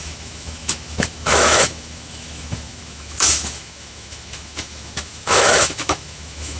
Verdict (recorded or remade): remade